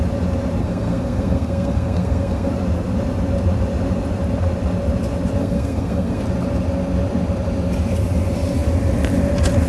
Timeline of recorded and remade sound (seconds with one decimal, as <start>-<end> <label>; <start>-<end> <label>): 0.0-0.6 recorded; 0.6-2.5 remade; 2.5-5.4 recorded; 5.4-6.2 remade; 6.2-9.7 recorded